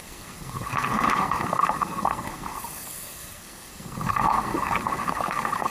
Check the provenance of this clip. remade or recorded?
remade